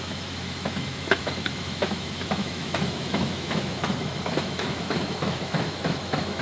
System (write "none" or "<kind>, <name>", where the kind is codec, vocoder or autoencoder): autoencoder, DAC-VAE